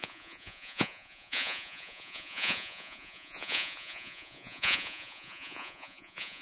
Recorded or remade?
remade